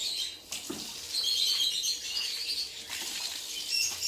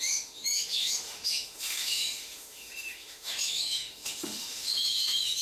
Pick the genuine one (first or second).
first